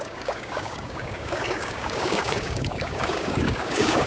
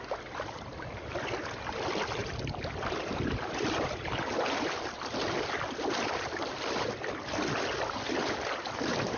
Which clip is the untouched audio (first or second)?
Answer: second